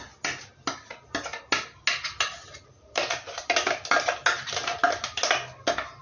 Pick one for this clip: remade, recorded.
recorded